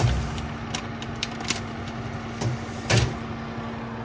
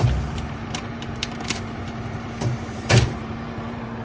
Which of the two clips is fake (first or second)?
second